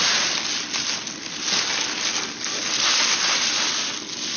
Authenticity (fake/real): real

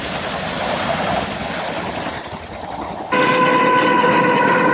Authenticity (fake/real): real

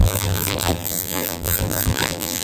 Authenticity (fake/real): fake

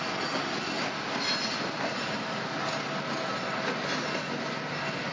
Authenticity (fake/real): real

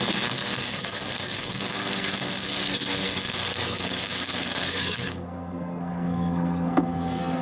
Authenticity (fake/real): fake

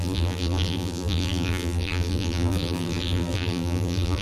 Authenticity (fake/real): fake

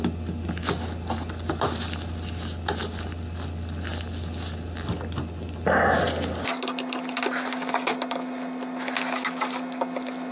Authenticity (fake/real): real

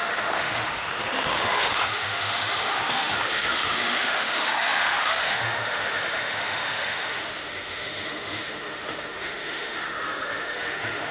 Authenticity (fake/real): fake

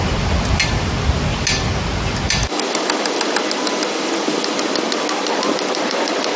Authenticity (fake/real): real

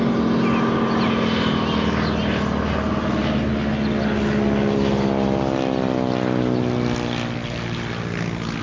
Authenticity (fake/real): real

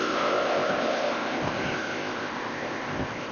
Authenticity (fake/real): fake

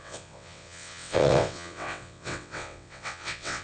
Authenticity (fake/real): fake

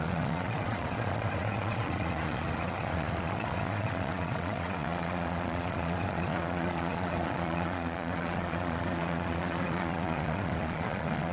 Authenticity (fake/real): fake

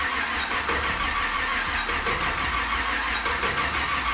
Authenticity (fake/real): real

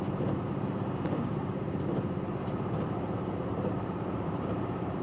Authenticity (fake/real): fake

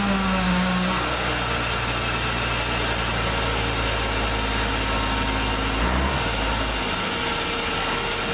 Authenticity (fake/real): real